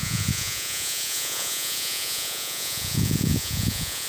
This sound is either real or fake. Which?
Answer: fake